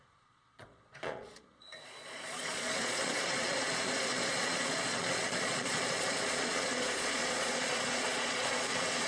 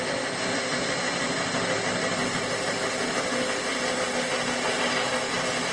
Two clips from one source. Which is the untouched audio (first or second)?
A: second